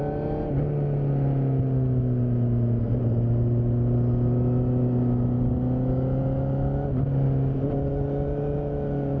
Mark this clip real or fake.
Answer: real